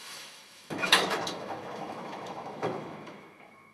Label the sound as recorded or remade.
remade